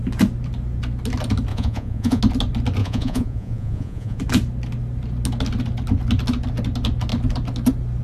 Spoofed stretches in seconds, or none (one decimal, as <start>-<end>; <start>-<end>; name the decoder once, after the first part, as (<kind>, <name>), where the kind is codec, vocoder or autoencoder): 1.5-2.2 (vocoder, Vocos); 2.8-4.2